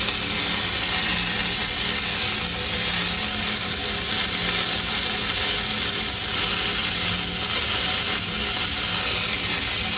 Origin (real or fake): real